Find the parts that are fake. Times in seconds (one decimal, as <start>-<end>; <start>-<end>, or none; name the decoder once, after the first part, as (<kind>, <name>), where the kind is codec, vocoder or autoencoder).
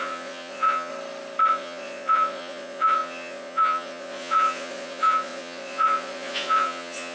0.0-0.9 (vocoder, Vocos); 1.5-7.1